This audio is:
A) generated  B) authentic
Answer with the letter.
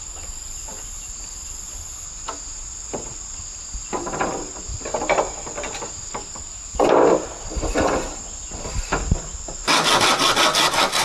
B